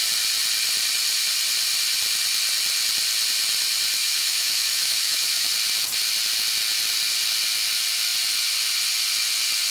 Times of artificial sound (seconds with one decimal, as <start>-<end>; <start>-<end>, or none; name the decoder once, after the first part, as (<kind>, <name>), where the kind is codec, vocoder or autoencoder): 4.0-5.5 (autoencoder, DAC-VAE)